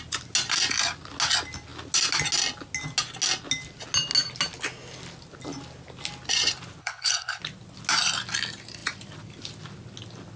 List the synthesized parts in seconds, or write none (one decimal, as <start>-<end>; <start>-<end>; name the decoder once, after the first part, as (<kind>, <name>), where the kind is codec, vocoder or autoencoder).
6.8-7.4 (codec, HILCodec)